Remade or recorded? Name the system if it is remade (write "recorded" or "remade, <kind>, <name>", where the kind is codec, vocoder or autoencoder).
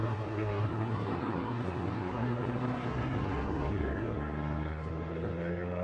remade, codec, SNAC